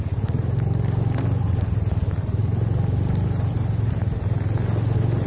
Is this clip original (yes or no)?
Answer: yes